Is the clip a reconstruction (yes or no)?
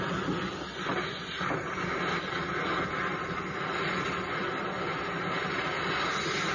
no